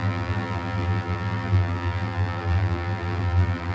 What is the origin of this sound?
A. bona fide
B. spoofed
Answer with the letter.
B